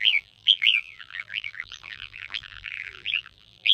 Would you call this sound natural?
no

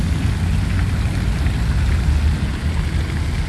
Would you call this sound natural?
yes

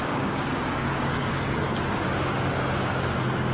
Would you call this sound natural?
no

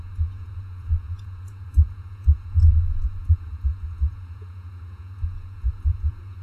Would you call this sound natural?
no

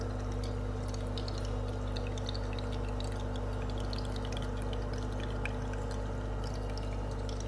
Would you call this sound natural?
yes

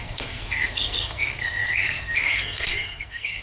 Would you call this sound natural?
no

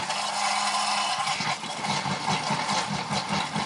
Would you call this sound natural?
yes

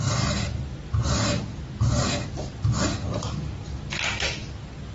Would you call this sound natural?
yes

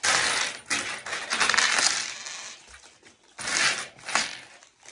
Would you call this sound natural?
yes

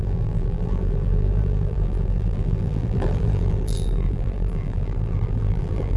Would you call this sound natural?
no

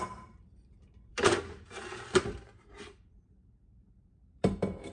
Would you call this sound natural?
no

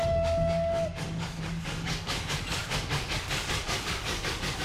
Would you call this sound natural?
no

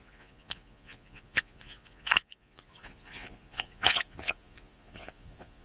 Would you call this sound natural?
no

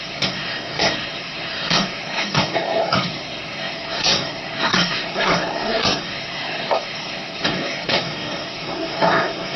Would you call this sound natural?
no